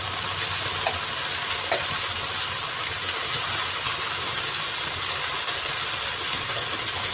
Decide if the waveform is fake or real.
real